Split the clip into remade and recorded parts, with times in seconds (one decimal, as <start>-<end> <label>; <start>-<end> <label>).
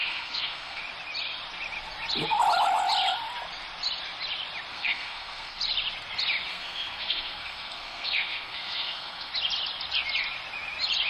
0.0-0.8 remade; 0.8-4.7 recorded; 4.7-5.6 remade; 5.6-6.5 recorded; 6.5-9.3 remade; 9.3-11.1 recorded